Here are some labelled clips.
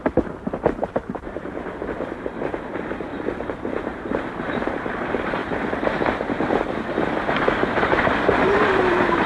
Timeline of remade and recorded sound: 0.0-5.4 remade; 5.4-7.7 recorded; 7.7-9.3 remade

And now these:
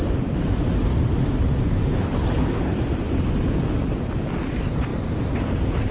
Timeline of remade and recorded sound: 0.0-2.8 remade; 2.8-4.9 recorded; 4.9-5.9 remade